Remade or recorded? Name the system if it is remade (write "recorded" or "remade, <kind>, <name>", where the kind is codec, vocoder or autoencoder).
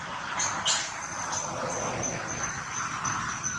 recorded